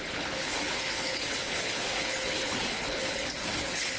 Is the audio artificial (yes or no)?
yes